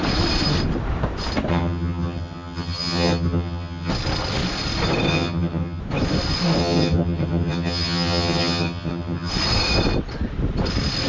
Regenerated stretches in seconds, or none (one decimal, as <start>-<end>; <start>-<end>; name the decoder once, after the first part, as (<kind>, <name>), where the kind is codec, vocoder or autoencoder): 1.5-3.9 (vocoder, HiFi-GAN); 5.1-5.8; 6.6-9.3